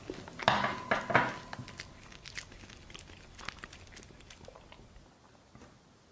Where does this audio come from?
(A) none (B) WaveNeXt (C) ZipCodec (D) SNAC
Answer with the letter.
A